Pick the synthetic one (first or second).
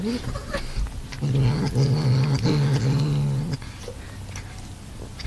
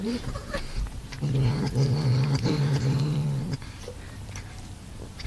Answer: second